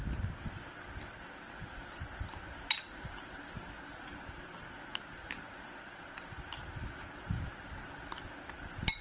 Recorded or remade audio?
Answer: recorded